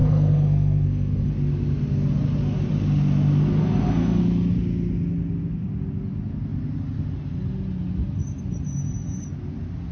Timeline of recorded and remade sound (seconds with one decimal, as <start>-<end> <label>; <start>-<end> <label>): 0.0-1.3 remade; 1.3-3.6 recorded; 3.6-4.2 remade; 4.2-9.9 recorded